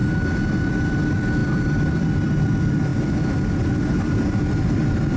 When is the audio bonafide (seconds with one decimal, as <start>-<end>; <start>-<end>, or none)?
0.0-0.7